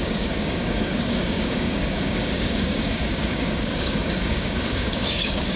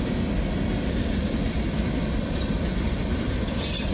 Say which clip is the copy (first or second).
first